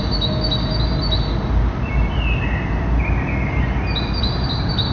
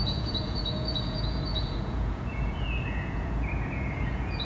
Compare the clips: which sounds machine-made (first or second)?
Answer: second